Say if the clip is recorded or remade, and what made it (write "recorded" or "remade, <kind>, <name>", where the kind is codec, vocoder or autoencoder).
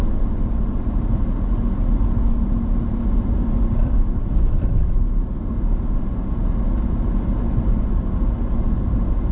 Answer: recorded